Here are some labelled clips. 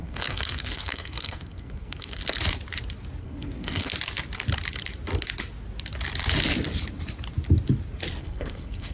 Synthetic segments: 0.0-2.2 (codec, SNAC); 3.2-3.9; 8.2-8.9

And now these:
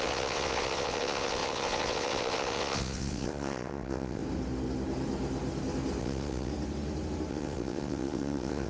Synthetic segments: 0.0-4.2 (vocoder, WaveNeXt); 6.0-6.5; 7.3-8.7

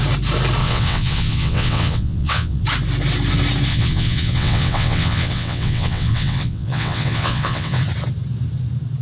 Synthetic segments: 0.6-2.6 (vocoder, WaveNeXt); 3.7-7.8

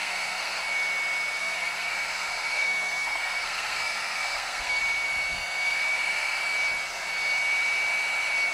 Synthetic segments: 0.0-0.6 (codec, SNAC); 1.4-4.8; 5.3-6.4